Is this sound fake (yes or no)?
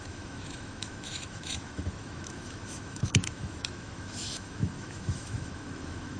yes